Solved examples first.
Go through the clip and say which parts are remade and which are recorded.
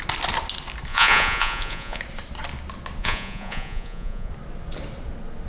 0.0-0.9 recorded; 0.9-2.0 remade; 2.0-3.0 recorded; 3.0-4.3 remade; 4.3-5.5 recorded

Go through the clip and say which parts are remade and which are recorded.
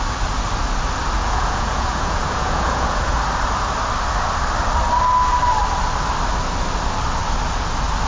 0.0-1.2 recorded; 1.2-3.2 remade; 3.2-8.1 recorded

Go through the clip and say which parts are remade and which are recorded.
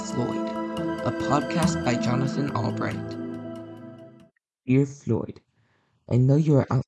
0.0-6.9 recorded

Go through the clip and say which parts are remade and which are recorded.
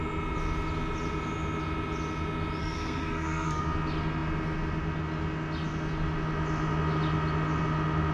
0.0-2.6 recorded; 2.6-3.6 remade; 3.6-8.1 recorded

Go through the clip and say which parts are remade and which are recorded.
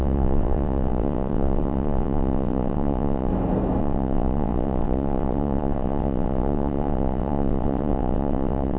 0.0-3.3 remade; 3.3-3.8 recorded; 3.8-8.8 remade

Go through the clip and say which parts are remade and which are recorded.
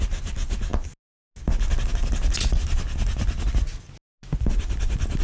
0.0-5.2 recorded